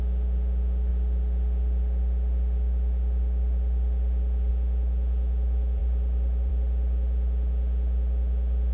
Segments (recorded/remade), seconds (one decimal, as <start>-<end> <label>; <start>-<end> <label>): 0.0-8.7 remade